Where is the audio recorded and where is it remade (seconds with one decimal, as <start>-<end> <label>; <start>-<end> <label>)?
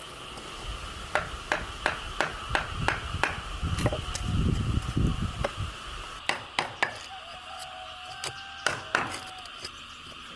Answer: 0.0-10.4 recorded